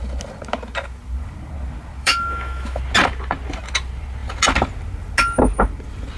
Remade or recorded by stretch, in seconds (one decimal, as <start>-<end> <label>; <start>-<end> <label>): 0.0-2.0 recorded; 2.0-2.8 remade; 2.8-6.2 recorded